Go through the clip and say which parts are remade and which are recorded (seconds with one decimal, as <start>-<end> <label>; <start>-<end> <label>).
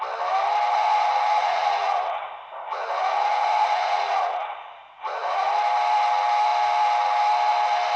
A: 0.0-0.7 recorded; 0.7-5.5 remade; 5.5-8.0 recorded